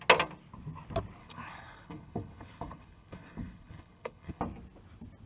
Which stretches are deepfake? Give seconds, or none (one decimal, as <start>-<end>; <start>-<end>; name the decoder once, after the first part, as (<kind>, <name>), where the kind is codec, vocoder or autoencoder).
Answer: 1.2-4.4 (codec, HILCodec)